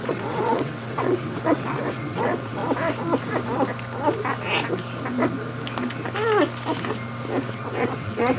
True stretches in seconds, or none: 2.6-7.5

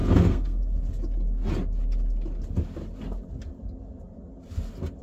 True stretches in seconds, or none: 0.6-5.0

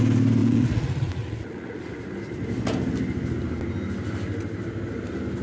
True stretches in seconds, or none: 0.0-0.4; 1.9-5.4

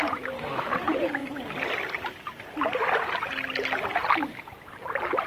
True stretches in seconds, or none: 1.2-4.4